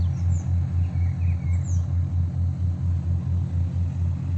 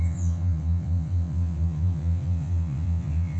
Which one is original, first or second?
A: first